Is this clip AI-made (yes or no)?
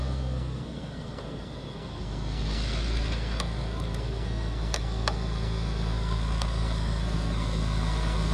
yes